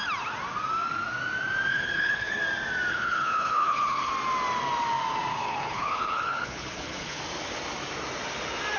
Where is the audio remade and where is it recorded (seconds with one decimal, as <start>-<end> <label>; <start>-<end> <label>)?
0.0-1.7 recorded; 1.7-2.4 remade; 2.4-2.9 recorded; 2.9-4.1 remade; 4.1-5.3 recorded; 5.3-7.2 remade; 7.2-8.8 recorded